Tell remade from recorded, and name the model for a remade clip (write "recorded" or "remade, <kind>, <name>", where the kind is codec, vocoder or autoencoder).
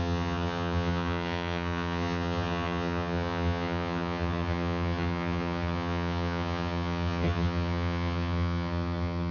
remade, vocoder, HiFi-GAN